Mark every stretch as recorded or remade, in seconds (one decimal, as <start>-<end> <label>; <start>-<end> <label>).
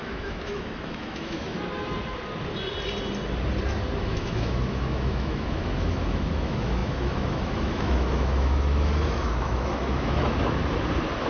0.0-1.5 remade; 1.5-4.0 recorded; 4.0-10.6 remade; 10.6-11.3 recorded